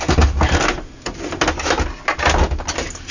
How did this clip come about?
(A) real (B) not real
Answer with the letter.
A